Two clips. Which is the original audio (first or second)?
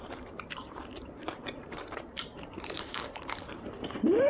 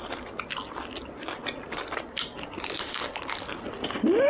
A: second